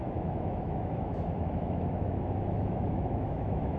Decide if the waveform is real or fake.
fake